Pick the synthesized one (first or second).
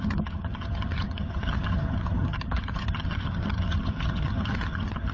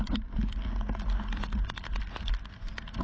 first